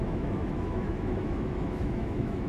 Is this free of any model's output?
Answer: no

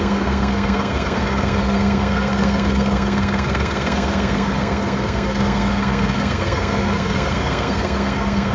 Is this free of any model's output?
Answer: no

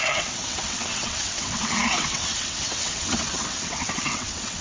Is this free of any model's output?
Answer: no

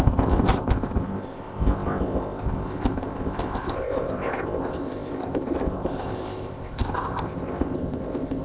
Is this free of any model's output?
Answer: no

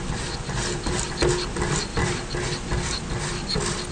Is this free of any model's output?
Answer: yes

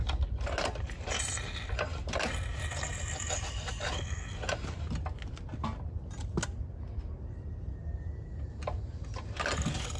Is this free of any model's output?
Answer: yes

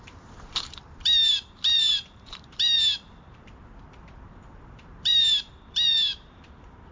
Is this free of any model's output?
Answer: no